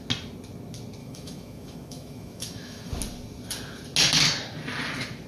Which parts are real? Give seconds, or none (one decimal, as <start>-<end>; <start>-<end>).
0.0-1.0; 2.9-5.3